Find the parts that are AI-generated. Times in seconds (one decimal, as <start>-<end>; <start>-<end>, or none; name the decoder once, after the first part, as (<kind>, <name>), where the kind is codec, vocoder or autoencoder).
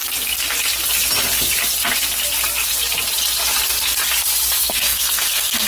4.6-5.7 (codec, SNAC)